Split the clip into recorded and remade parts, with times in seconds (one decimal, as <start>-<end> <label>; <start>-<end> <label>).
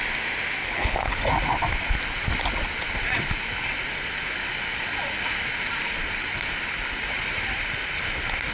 0.0-0.6 recorded; 0.6-1.2 remade; 1.2-8.5 recorded